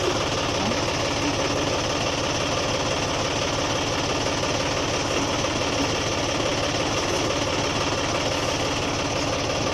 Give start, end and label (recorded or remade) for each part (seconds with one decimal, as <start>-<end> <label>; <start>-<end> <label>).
0.0-9.7 recorded